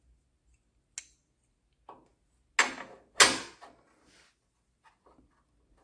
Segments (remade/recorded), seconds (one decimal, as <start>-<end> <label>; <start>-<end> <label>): 0.0-5.8 recorded